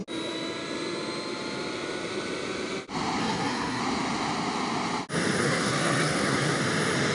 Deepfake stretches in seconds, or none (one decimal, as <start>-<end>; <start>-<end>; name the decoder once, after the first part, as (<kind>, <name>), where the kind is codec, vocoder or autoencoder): 3.2-3.8 (codec, SNAC); 5.4-6.6